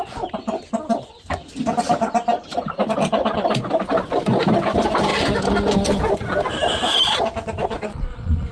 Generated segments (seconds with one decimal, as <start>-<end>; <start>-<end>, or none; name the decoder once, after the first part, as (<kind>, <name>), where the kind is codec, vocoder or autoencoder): 7.9-8.5 (vocoder, Vocos)